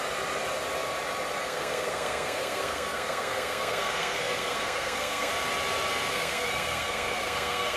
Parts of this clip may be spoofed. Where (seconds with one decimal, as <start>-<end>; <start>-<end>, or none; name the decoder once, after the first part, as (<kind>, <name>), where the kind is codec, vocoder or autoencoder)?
1.4-5.3 (codec, SNAC); 6.1-7.8